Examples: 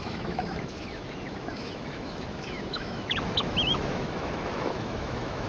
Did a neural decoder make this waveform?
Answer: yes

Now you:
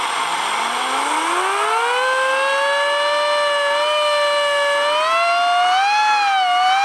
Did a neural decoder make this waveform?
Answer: no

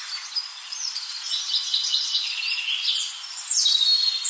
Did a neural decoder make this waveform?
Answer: yes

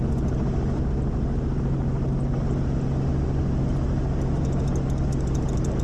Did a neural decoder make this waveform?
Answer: no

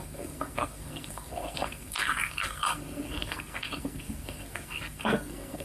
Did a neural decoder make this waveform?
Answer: yes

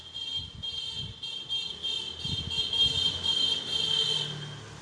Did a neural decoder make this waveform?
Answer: no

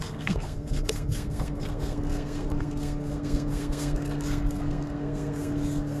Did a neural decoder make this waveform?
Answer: yes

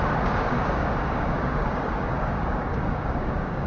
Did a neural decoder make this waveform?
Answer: yes